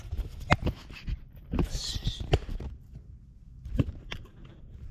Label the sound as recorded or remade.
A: recorded